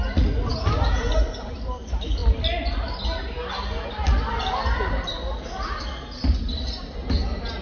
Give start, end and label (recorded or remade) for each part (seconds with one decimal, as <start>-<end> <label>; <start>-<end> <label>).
0.0-7.6 recorded

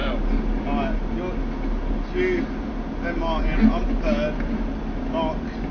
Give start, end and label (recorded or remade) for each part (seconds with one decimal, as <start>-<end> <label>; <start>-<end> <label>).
0.0-5.7 recorded

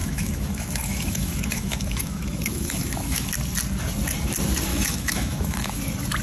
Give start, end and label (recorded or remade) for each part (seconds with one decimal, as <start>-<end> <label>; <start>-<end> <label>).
0.0-3.3 remade; 3.3-4.7 recorded; 4.7-5.8 remade; 5.8-6.2 recorded

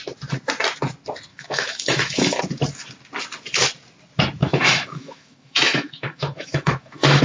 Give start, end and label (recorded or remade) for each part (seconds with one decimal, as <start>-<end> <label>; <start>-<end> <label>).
0.0-1.3 recorded; 1.3-2.4 remade; 2.4-4.4 recorded; 4.4-7.2 remade

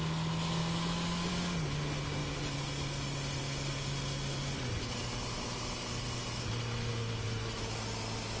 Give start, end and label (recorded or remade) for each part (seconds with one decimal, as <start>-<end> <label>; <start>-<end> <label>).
0.0-0.6 recorded; 0.6-1.3 remade; 1.3-8.4 recorded

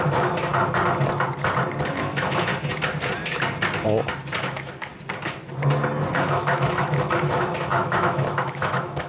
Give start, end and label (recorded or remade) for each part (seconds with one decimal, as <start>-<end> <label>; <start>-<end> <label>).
0.0-0.5 remade; 0.5-1.9 recorded; 1.9-2.5 remade; 2.5-4.4 recorded; 4.4-4.9 remade; 4.9-6.1 recorded; 6.1-9.1 remade

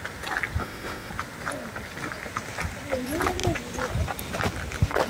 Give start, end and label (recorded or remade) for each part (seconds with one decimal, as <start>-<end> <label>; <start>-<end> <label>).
0.0-0.6 recorded; 0.6-1.1 remade; 1.1-5.1 recorded